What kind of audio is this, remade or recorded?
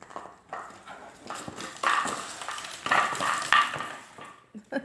recorded